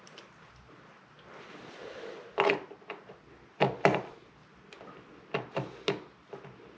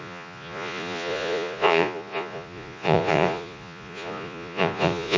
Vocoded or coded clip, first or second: second